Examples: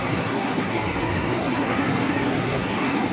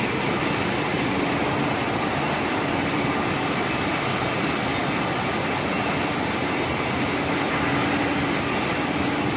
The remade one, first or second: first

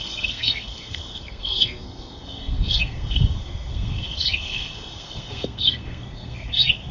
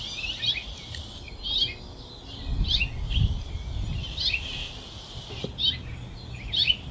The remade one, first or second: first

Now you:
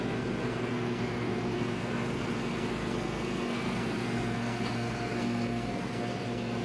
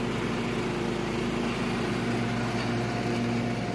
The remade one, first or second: first